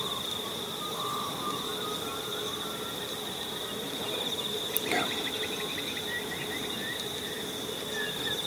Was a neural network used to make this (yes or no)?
no